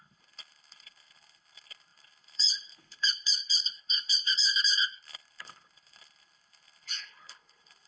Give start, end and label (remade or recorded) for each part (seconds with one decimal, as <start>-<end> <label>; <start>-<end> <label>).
0.0-7.9 remade